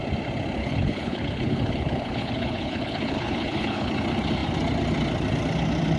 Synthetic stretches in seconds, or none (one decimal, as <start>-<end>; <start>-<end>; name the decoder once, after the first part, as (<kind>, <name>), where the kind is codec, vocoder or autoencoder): 0.6-3.9 (codec, HILCodec)